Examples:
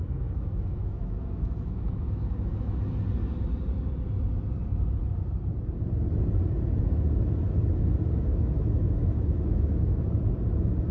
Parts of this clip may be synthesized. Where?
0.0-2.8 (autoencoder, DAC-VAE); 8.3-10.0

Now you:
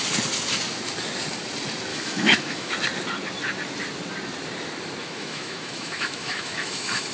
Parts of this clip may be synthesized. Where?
1.9-2.7 (autoencoder, DAC-VAE); 5.0-7.1

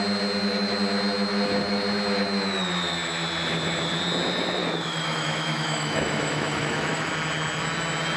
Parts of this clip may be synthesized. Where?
4.6-7.1 (autoencoder, DAC-VAE)